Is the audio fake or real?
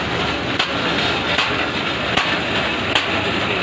real